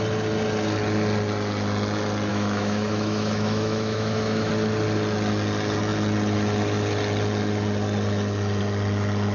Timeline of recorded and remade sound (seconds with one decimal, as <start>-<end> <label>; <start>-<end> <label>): 0.0-2.3 recorded; 2.3-4.5 remade; 4.5-9.3 recorded